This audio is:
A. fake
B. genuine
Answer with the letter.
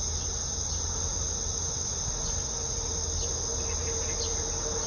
B